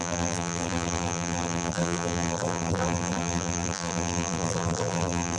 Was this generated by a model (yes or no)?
yes